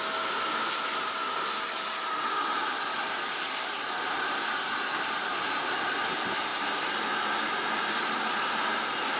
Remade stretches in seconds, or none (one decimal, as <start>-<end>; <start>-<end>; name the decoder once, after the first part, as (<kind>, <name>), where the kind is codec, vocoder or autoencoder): none